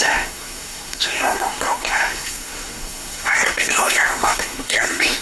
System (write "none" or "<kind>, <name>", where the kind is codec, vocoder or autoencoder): codec, SNAC